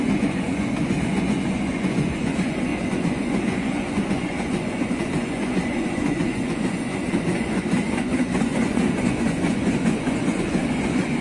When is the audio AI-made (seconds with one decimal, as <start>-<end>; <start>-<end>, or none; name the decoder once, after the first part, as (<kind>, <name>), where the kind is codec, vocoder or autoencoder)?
0.0-11.2 (vocoder, Vocos)